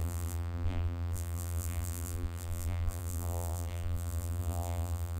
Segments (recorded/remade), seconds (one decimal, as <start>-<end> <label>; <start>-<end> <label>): 0.0-5.2 remade